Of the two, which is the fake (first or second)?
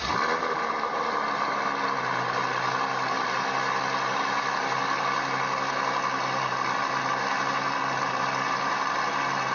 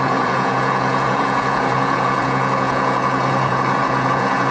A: second